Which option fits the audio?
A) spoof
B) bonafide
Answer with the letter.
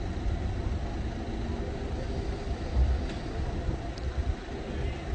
B